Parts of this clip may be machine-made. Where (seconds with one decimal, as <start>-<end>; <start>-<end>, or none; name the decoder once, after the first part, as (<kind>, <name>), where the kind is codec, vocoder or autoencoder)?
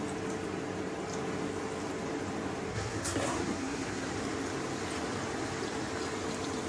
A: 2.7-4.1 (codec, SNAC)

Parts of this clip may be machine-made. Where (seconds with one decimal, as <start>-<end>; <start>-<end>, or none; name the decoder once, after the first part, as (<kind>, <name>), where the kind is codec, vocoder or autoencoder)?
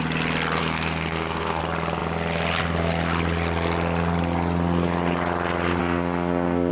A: 0.6-1.6 (codec, SNAC); 5.8-6.7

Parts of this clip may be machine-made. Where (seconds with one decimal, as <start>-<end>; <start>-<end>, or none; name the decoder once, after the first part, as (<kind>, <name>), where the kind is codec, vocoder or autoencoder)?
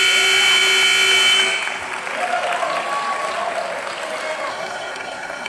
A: 4.5-5.5 (codec, SNAC)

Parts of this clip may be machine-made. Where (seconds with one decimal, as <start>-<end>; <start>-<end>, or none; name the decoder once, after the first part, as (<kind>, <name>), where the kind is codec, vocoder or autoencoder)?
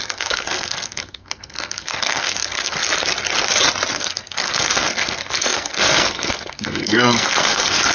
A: 0.0-2.8 (codec, SNAC); 3.9-7.9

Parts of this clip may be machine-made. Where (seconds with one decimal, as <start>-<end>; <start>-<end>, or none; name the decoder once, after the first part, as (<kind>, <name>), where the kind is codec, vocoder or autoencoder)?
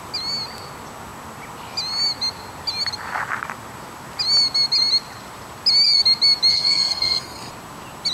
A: 6.5-7.5 (codec, SNAC)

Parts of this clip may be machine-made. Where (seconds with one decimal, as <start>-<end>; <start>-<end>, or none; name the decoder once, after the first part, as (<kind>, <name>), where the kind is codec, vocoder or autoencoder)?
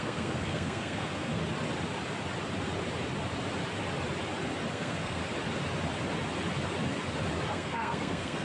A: 0.0-1.4 (codec, SNAC); 4.7-5.2; 7.5-8.4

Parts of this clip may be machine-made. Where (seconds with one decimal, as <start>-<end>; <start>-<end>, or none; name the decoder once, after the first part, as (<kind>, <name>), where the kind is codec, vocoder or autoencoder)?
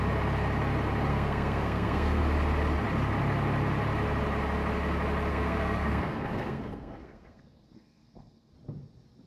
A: 1.1-2.2 (codec, SNAC); 5.3-8.5